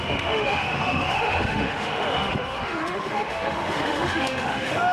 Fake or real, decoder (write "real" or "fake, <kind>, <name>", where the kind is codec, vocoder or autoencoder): fake, autoencoder, DAC-VAE